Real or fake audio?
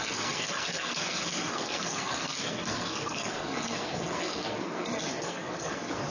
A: fake